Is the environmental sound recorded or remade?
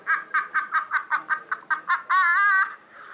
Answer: recorded